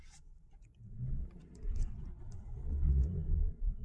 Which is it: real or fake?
fake